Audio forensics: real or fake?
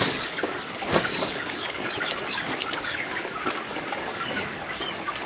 fake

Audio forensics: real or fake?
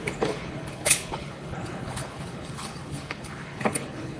fake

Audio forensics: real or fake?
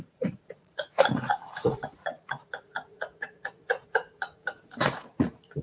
fake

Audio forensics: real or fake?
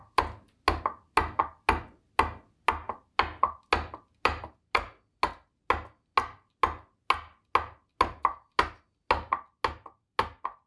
real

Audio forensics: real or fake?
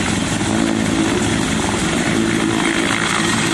fake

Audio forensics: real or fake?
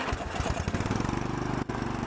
fake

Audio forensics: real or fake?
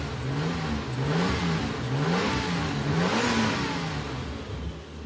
real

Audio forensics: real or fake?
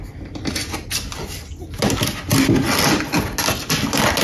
real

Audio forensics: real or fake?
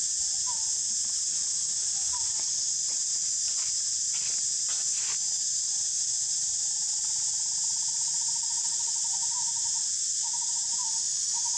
real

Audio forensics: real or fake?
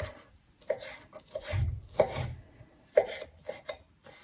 real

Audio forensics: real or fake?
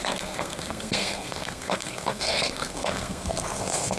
fake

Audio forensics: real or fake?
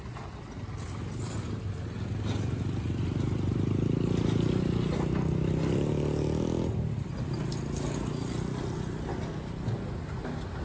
real